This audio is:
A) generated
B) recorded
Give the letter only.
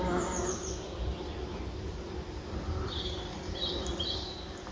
B